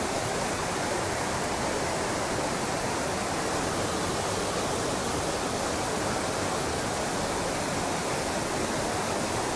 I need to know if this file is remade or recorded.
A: recorded